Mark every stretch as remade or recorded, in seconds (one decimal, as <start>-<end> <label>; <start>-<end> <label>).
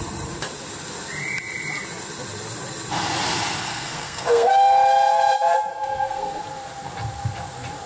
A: 0.0-3.7 recorded; 3.7-4.5 remade; 4.5-5.7 recorded; 5.7-6.4 remade; 6.4-7.9 recorded